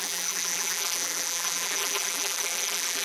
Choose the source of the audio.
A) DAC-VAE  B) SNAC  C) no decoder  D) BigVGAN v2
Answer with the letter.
D